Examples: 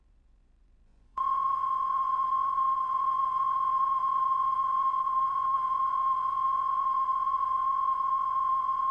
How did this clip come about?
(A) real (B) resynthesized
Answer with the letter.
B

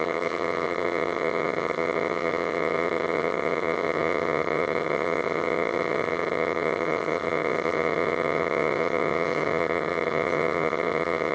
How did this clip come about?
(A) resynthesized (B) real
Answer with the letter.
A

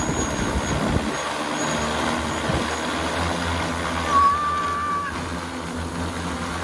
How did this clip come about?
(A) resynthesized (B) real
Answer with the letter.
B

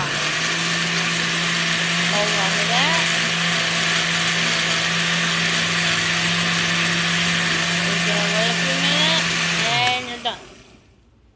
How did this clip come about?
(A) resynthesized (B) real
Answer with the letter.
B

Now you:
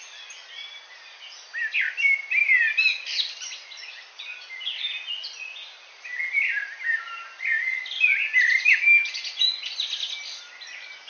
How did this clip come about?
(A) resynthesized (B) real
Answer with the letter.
B